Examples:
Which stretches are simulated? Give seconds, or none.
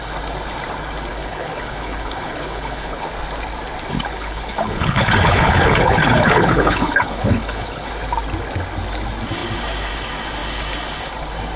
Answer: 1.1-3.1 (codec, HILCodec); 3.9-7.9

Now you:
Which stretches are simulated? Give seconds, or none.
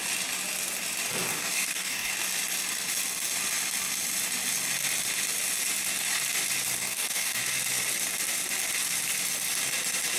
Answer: 1.3-2.1 (codec, DAC); 6.8-7.4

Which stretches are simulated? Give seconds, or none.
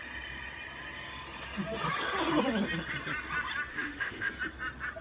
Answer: 3.7-4.3 (autoencoder, DAC-VAE)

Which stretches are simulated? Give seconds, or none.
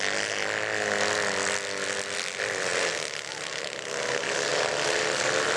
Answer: none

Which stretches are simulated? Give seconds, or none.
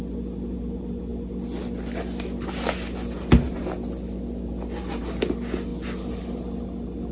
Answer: none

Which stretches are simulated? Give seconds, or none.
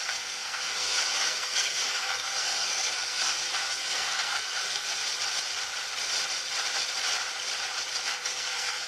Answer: 0.0-5.0 (codec, SNAC); 8.1-8.9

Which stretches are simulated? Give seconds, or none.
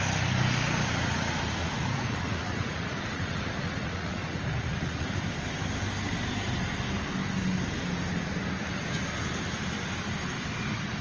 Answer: 1.6-5.2 (vocoder, Vocos)